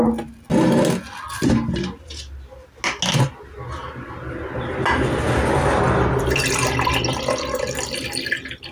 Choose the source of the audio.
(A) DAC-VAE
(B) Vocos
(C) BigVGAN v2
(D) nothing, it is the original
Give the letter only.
D